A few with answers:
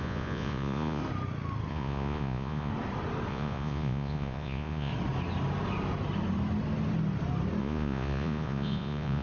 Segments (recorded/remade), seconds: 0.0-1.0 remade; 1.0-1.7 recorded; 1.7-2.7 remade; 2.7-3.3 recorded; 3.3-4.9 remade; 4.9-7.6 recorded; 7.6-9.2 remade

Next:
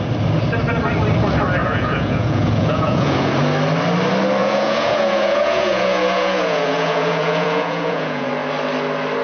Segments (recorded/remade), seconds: 0.0-1.6 recorded; 1.6-3.3 remade; 3.3-4.4 recorded; 4.4-8.3 remade; 8.3-9.2 recorded

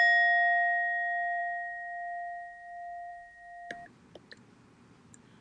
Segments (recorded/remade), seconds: 0.0-5.4 recorded

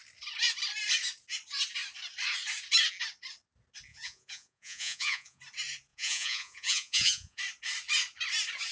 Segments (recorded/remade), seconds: 0.0-3.9 recorded; 3.9-5.4 remade; 5.4-5.9 recorded; 5.9-7.4 remade; 7.4-8.7 recorded

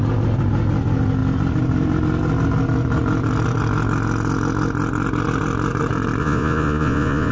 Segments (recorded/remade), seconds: 0.0-6.2 recorded; 6.2-7.3 remade

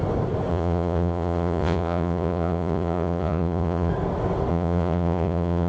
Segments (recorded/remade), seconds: 0.0-0.5 recorded; 0.5-3.9 remade; 3.9-4.5 recorded; 4.5-5.7 remade

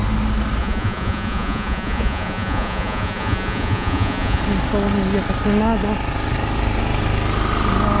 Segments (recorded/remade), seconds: 0.0-0.6 recorded; 0.6-4.4 remade; 4.4-8.0 recorded